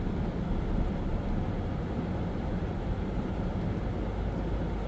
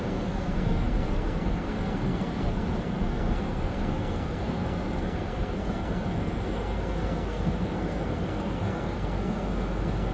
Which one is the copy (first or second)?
second